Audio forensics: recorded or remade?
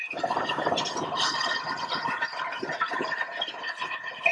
recorded